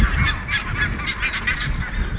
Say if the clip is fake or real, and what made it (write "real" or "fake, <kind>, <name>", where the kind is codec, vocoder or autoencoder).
real